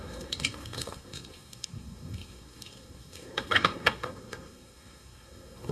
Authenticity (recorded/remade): remade